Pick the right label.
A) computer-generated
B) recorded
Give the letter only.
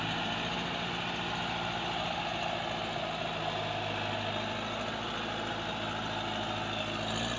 B